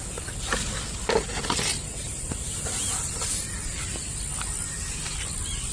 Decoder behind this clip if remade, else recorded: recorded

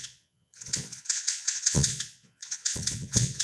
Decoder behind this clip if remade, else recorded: remade, vocoder, Vocos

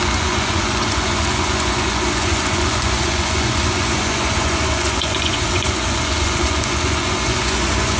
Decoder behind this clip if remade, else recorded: remade, vocoder, Vocos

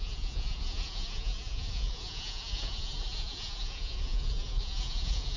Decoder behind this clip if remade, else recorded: remade, vocoder, Vocos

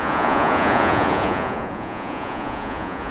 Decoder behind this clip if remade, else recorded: remade, vocoder, Vocos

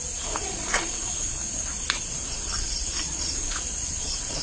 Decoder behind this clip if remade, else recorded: remade, vocoder, Vocos